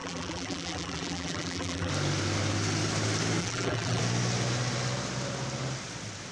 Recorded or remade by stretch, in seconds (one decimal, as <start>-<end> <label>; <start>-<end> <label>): 0.0-1.9 remade; 1.9-3.4 recorded; 3.4-4.0 remade; 4.0-6.3 recorded